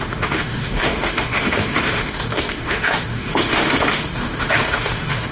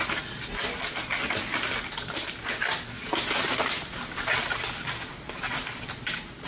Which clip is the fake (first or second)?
first